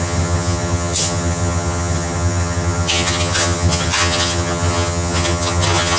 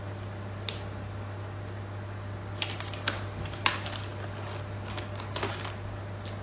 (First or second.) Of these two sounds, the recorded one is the second